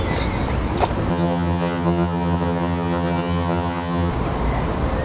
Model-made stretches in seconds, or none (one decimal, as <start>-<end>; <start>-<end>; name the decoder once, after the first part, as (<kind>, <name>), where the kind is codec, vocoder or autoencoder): 1.1-4.1 (vocoder, HiFi-GAN)